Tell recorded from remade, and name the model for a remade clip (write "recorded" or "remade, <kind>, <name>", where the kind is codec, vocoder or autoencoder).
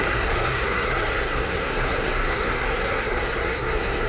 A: remade, codec, SNAC